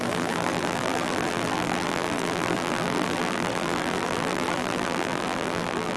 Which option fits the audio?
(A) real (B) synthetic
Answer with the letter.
B